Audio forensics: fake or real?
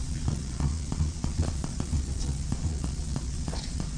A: fake